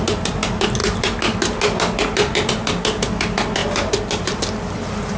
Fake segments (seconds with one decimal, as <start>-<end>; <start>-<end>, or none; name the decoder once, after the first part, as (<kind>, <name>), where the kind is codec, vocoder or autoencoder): none